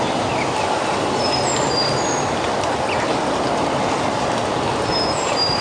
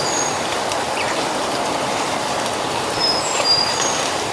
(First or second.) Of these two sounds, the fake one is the second